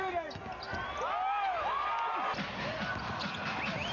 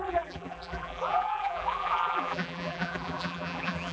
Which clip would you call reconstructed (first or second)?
second